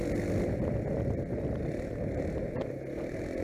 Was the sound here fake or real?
real